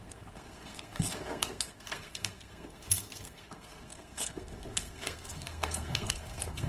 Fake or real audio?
fake